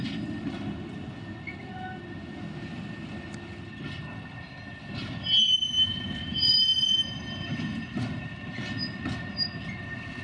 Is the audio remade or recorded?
recorded